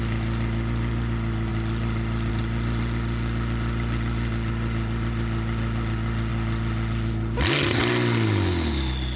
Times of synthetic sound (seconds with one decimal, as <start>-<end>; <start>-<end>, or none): none